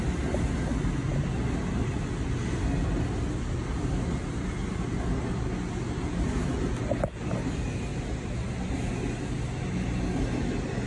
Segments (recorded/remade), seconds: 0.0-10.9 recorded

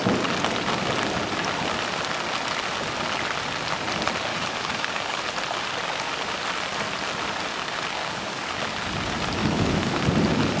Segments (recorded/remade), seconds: 0.0-4.3 recorded; 4.3-5.2 remade; 5.2-8.0 recorded; 8.0-8.6 remade; 8.6-9.4 recorded; 9.4-10.0 remade; 10.0-10.6 recorded

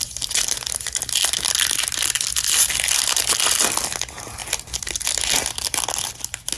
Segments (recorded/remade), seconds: 0.0-6.6 recorded

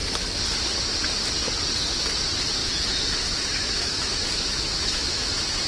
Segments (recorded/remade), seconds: 0.0-2.6 recorded; 2.6-5.3 remade; 5.3-5.7 recorded

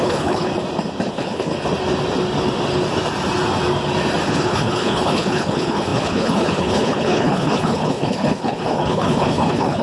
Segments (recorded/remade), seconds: 0.0-0.5 remade; 0.5-1.1 recorded; 1.1-1.5 remade; 1.5-4.3 recorded; 4.3-9.8 remade